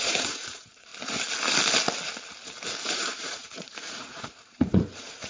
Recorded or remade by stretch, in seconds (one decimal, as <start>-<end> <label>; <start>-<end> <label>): 0.0-0.9 remade; 0.9-2.8 recorded; 2.8-5.3 remade